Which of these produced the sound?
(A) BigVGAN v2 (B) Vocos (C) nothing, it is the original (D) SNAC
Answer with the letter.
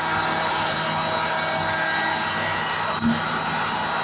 C